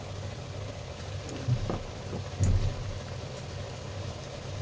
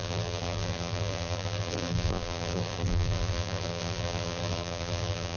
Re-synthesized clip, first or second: second